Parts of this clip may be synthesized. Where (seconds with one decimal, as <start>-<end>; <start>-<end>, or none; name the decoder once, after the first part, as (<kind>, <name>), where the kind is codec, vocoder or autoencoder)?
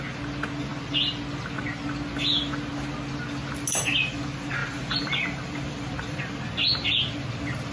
4.6-6.2 (vocoder, BigVGAN v2)